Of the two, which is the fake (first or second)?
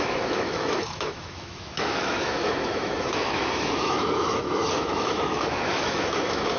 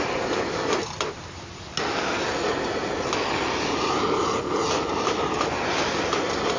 first